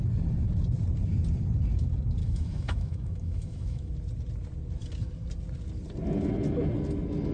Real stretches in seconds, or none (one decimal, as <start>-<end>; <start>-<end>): 0.0-2.2; 3.9-7.3